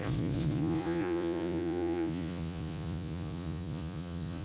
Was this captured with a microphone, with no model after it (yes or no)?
no